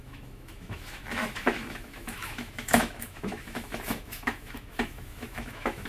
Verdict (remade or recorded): remade